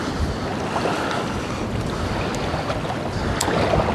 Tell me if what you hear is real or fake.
real